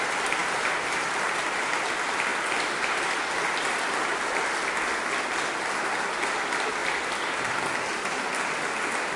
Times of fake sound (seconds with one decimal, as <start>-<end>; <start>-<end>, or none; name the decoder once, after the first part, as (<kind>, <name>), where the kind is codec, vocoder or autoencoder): none